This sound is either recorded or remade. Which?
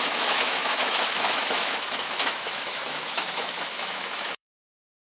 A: remade